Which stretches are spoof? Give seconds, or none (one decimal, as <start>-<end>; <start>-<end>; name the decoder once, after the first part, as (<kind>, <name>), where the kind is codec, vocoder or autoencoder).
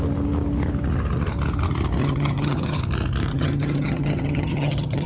2.0-2.8 (vocoder, HiFi-GAN); 3.3-5.1